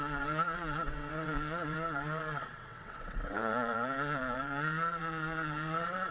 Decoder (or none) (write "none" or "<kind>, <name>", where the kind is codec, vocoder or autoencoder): vocoder, WaveNeXt